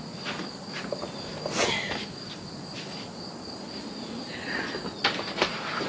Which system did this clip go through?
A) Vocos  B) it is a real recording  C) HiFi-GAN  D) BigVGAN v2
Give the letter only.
B